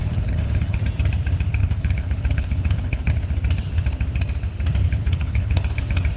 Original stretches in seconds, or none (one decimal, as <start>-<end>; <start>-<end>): 0.8-1.6; 3.1-4.8; 5.8-6.2